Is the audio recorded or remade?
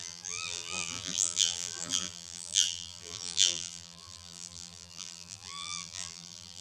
remade